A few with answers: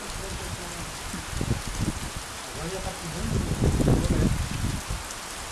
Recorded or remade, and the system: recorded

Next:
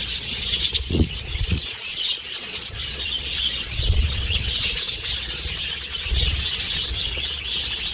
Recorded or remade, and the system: remade, vocoder, Vocos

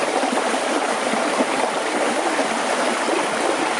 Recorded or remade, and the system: recorded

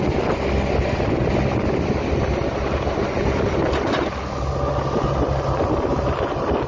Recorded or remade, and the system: recorded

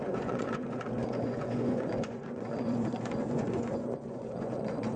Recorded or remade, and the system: remade, vocoder, Vocos